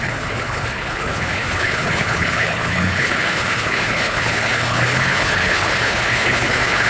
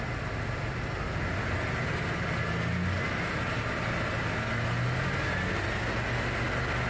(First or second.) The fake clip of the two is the first